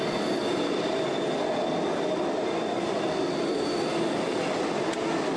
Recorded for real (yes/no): yes